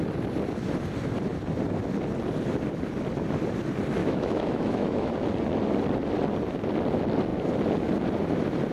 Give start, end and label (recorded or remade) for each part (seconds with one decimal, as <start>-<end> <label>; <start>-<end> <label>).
0.0-4.0 recorded; 4.0-5.1 remade; 5.1-8.7 recorded